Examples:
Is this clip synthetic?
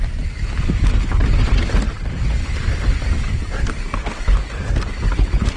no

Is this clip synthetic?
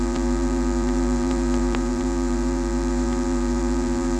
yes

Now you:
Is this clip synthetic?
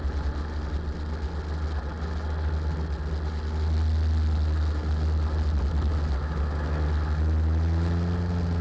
no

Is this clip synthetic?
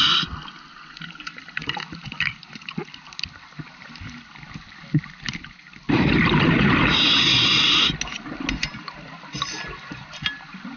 no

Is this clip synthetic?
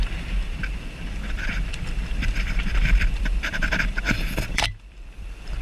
yes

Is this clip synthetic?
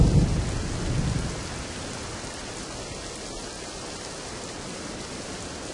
no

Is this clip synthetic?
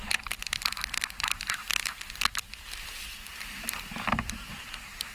no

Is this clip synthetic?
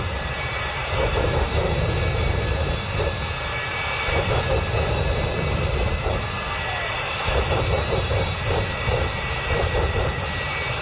yes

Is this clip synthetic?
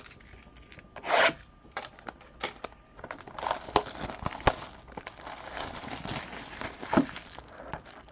no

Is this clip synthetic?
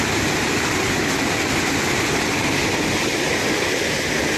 no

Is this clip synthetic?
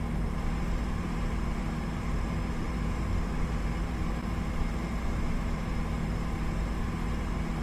yes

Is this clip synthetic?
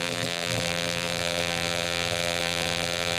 yes